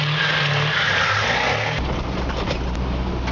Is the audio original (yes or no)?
yes